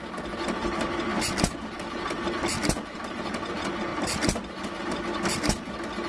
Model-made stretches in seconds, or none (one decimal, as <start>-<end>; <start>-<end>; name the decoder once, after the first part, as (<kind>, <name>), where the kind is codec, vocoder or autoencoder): none